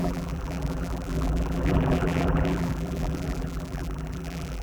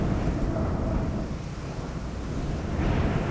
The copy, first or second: first